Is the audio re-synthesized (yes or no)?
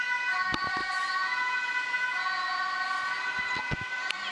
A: no